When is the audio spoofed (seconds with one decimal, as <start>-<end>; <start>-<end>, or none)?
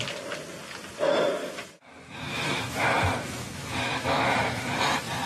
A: 1.4-4.6